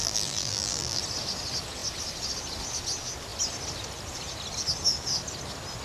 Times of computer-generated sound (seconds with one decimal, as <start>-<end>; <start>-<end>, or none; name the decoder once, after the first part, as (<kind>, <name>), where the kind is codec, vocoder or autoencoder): 0.0-1.0 (vocoder, BigVGAN v2)

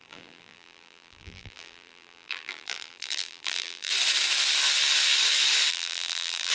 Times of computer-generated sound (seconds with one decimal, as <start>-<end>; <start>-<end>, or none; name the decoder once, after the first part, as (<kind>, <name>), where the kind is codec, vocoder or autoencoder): 0.0-3.9 (vocoder, BigVGAN v2); 5.7-6.5

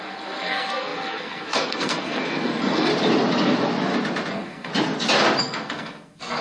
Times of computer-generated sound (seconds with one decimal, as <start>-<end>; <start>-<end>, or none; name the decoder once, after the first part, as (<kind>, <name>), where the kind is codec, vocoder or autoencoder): 0.0-2.9 (codec, SNAC); 4.3-4.7; 5.4-6.4

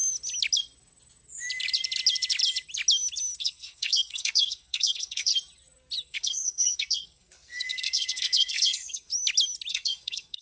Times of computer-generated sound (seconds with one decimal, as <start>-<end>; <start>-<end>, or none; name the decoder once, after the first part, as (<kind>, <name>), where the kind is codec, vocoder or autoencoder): 3.4-5.3 (codec, SNAC); 6.0-9.1; 9.7-10.4

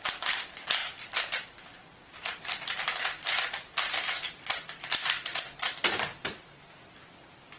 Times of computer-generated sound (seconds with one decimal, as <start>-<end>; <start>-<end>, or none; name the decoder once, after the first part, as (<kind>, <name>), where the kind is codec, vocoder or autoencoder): 0.0-7.6 (vocoder, BigVGAN v2)

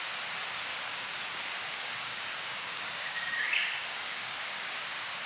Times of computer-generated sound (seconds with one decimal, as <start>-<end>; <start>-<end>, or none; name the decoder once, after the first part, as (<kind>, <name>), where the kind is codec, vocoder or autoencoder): 0.7-1.2 (codec, DAC); 1.7-5.3

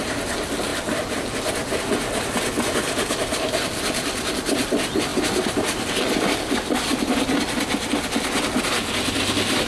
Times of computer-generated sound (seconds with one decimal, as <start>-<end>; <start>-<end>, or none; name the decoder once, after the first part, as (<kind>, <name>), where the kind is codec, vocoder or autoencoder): none

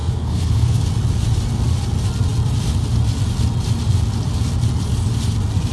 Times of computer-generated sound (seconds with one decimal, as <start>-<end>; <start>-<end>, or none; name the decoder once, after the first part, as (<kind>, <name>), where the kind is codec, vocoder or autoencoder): 0.0-0.8 (codec, SNAC)